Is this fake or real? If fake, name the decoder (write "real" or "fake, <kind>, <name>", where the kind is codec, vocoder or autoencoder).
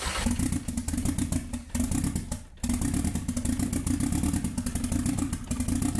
real